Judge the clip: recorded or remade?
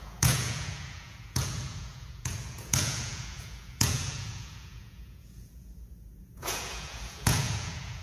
remade